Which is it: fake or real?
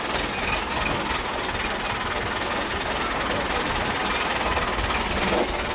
real